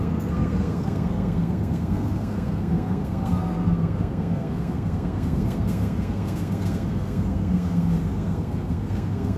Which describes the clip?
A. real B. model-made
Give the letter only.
B